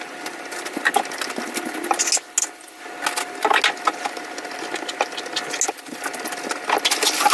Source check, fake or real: real